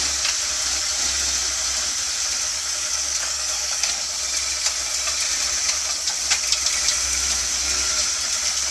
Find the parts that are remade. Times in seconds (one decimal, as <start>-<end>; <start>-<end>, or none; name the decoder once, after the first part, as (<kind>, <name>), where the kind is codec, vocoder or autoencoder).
2.5-4.1 (codec, DAC)